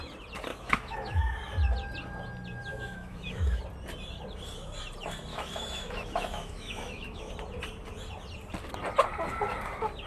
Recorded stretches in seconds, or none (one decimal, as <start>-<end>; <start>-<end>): 0.0-0.5; 1.2-2.7; 3.6-5.3; 7.2-10.1